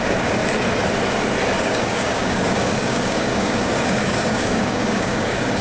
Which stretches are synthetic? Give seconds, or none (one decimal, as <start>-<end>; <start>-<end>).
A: 0.0-0.4; 1.6-5.6